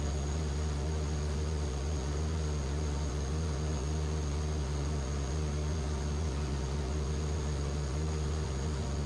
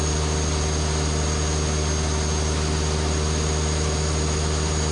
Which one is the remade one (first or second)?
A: first